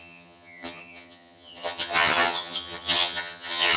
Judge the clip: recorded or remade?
remade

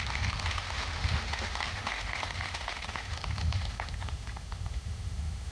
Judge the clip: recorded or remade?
remade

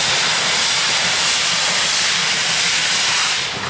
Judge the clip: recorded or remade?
recorded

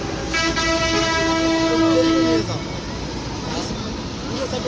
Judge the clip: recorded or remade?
recorded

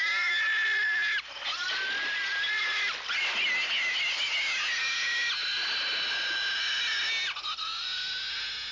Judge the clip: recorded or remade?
recorded